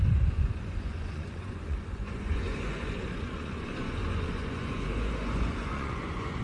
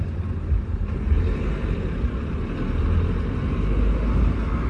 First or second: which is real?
second